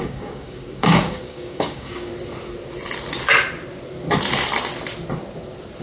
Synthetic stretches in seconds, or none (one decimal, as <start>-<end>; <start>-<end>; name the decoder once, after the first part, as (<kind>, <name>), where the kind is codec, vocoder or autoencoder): 0.0-2.1 (codec, DAC)